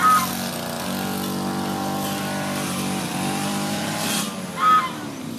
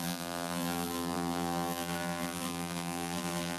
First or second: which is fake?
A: second